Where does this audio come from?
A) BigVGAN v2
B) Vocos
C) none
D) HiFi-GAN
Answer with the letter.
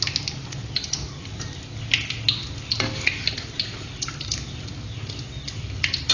C